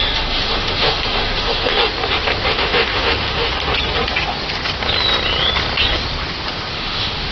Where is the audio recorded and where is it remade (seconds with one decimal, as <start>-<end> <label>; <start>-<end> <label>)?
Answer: 0.0-1.9 remade; 1.9-2.5 recorded; 2.5-3.7 remade; 3.7-6.7 recorded; 6.7-7.3 remade